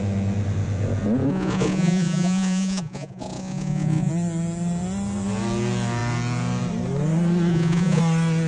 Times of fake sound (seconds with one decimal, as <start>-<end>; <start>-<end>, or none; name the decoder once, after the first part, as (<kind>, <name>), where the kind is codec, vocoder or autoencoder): 1.3-4.1 (vocoder, Vocos); 7.5-8.0